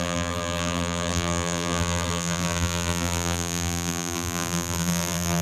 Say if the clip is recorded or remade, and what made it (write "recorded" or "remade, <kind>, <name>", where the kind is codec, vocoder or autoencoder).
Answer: remade, vocoder, BigVGAN v2